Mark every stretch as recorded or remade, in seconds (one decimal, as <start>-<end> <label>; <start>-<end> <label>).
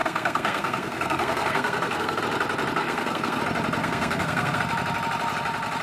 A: 0.0-2.2 remade; 2.2-2.8 recorded; 2.8-3.4 remade; 3.4-3.8 recorded; 3.8-4.6 remade; 4.6-5.8 recorded